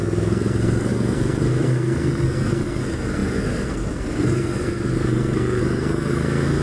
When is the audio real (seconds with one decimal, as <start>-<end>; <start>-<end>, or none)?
none